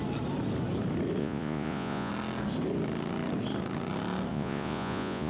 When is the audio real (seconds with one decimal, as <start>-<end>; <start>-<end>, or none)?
0.0-1.2; 2.1-4.3